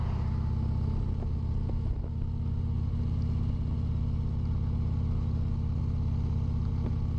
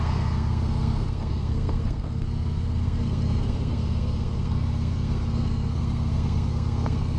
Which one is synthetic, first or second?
second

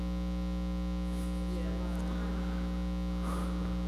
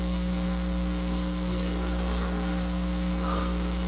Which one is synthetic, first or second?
second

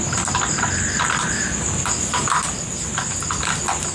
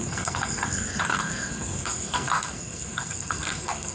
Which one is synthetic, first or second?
second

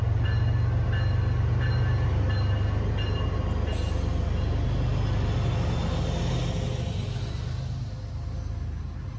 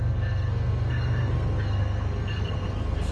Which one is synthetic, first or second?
second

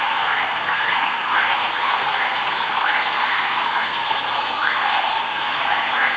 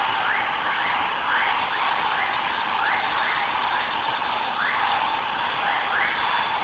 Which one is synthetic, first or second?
first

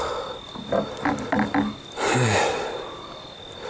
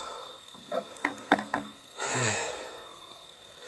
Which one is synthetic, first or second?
second